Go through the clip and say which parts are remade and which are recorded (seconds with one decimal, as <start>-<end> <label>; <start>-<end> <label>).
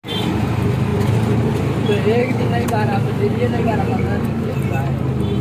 0.0-2.2 recorded; 2.2-4.5 remade; 4.5-5.4 recorded